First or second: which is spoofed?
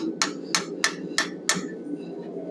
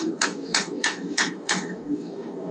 second